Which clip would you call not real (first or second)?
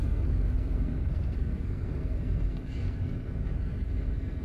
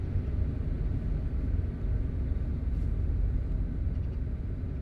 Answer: first